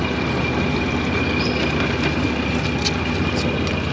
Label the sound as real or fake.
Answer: real